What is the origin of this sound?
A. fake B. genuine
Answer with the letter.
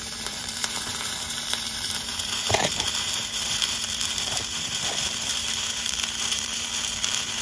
A